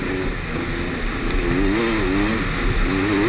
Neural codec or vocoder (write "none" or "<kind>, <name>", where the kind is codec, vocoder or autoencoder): none